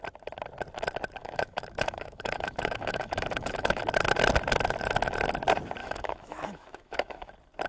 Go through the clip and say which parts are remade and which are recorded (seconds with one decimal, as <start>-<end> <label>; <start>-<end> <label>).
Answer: 0.0-1.2 recorded; 1.2-3.8 remade; 3.8-5.8 recorded; 5.8-7.3 remade; 7.3-7.7 recorded